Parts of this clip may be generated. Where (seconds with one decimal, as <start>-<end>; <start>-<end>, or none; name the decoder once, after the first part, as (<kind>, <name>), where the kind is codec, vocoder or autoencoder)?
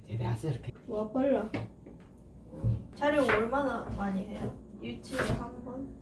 2.4-3.0 (autoencoder, DAC-VAE)